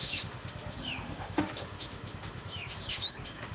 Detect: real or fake fake